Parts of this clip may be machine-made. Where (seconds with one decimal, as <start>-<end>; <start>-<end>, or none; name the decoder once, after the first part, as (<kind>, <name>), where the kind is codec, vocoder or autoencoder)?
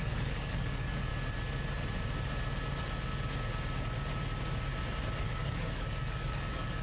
0.0-1.1 (codec, DAC); 5.2-6.8